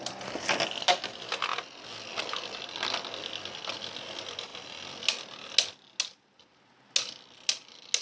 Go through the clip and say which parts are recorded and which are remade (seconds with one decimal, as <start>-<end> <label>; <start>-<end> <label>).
0.0-8.0 recorded